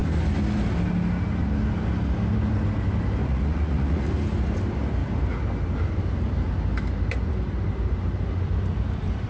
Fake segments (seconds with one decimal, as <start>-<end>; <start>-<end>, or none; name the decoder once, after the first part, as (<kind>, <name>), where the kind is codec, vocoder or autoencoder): 3.2-4.1 (vocoder, Vocos)